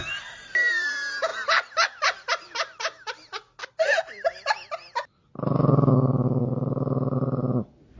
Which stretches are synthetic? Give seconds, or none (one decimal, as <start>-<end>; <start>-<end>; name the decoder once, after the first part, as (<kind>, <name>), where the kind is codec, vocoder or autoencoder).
none